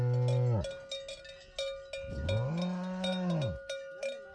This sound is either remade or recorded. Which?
recorded